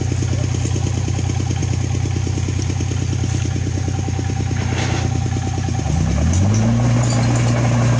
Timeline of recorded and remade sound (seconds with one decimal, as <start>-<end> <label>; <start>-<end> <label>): 0.0-8.0 recorded